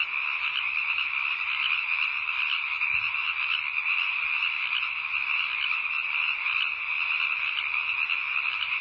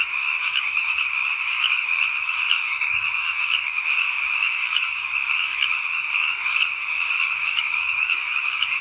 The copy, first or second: second